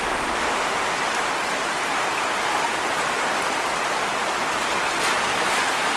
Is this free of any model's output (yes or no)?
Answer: yes